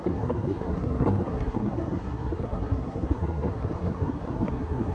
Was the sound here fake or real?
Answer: fake